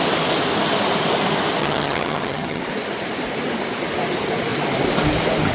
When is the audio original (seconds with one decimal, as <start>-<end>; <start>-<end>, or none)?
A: 0.0-1.6; 2.6-5.5